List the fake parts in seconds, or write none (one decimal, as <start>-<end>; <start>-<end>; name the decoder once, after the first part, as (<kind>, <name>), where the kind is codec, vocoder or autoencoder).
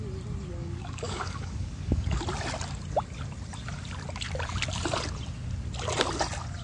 0.6-2.2 (codec, DAC)